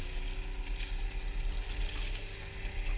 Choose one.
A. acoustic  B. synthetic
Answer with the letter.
A